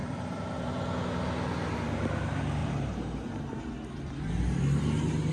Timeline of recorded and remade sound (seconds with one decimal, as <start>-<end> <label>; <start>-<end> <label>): 0.0-0.7 remade; 0.7-2.6 recorded; 2.6-3.6 remade; 3.6-5.3 recorded